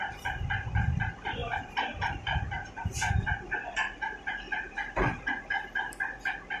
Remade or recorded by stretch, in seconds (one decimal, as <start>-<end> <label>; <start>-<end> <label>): 0.0-1.4 recorded; 1.4-5.4 remade; 5.4-6.6 recorded

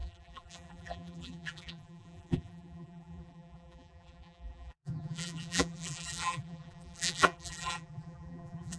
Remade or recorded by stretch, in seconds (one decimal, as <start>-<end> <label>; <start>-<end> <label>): 0.0-8.8 remade